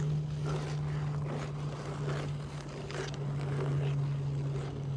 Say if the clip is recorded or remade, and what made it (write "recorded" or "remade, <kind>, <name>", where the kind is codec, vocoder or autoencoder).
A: recorded